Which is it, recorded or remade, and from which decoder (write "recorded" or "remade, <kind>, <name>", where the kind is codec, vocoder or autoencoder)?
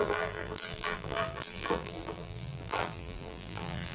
remade, vocoder, BigVGAN v2